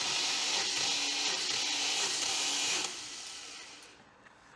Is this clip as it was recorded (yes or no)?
yes